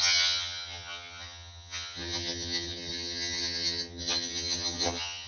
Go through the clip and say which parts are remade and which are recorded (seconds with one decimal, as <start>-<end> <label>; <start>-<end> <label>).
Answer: 0.0-5.3 remade